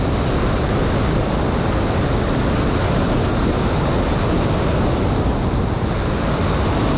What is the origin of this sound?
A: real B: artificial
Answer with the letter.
A